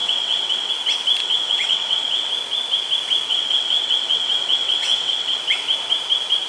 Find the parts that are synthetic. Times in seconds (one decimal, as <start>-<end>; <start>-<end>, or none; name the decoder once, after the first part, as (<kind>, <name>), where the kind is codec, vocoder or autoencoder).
0.0-0.7 (vocoder, WaveNeXt); 1.2-2.3; 3.3-5.4